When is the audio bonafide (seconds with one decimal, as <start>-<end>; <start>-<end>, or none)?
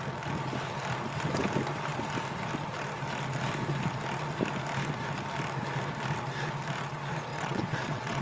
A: 0.0-7.3